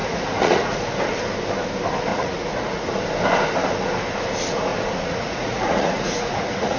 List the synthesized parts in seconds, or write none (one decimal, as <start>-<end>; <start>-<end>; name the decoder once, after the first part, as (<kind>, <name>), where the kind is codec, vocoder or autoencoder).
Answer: 0.0-0.8 (vocoder, Vocos); 2.1-2.9; 4.7-6.8